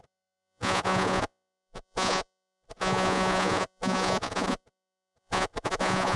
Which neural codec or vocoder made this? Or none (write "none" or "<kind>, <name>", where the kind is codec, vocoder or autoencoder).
vocoder, Vocos